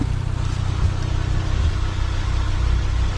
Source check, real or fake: real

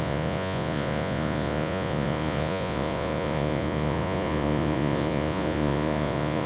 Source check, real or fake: fake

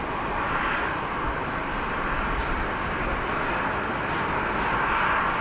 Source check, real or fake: real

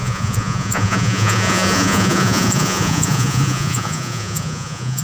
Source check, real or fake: fake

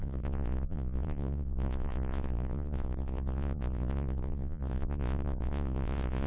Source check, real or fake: fake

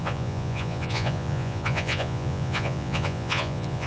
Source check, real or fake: fake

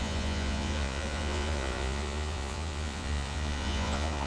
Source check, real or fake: fake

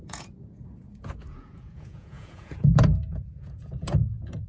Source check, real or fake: fake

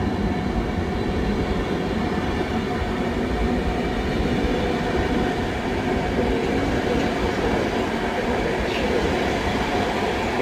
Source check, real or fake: real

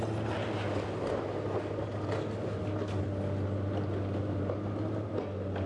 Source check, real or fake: real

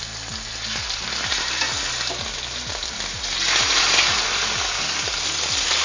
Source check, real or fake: real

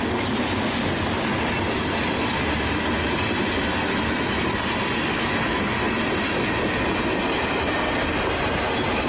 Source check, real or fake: real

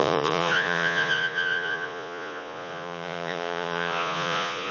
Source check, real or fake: fake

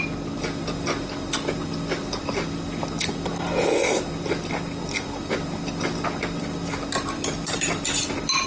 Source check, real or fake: real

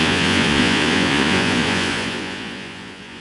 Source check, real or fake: fake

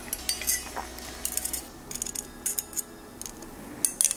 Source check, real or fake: real